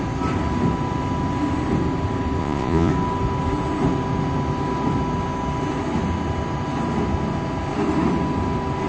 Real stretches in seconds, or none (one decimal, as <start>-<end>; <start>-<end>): 0.0-2.4; 2.9-8.9